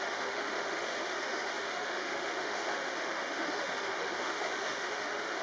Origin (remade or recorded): remade